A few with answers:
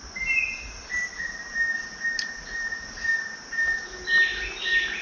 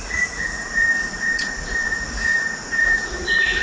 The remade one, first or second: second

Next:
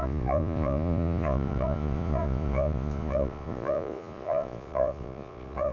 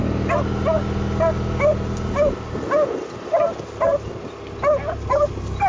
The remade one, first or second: first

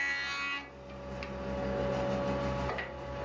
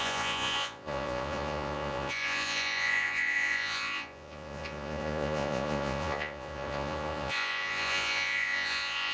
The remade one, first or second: second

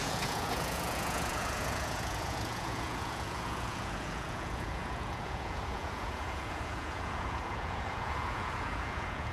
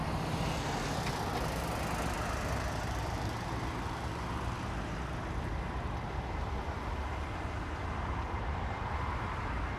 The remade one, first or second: first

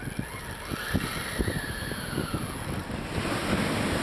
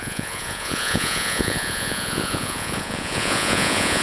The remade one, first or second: second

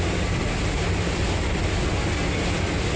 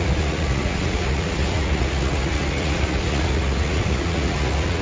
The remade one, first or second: second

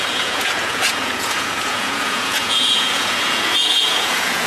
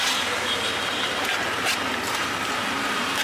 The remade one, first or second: first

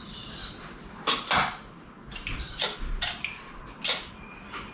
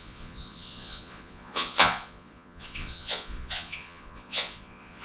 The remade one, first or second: second